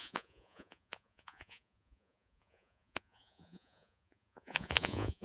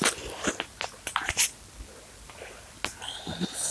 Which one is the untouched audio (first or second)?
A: second